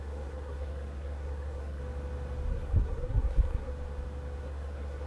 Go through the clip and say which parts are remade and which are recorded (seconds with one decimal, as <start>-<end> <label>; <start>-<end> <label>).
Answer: 0.0-1.8 remade; 1.8-2.5 recorded; 2.5-3.7 remade; 3.7-4.4 recorded; 4.4-5.1 remade